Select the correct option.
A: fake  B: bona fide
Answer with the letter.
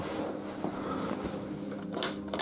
B